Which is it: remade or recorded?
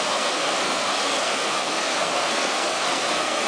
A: remade